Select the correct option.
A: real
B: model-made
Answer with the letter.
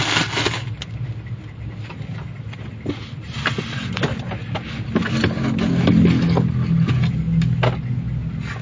A